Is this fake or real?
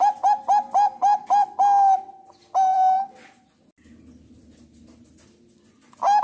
real